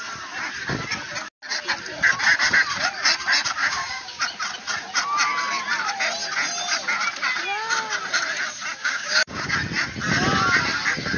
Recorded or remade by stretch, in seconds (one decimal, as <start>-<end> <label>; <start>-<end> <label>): 0.0-3.6 recorded; 3.6-4.2 remade; 4.2-8.8 recorded; 8.8-9.5 remade; 9.5-11.2 recorded